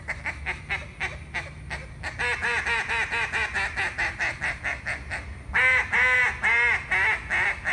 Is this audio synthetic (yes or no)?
no